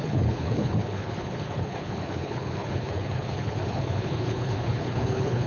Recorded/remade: remade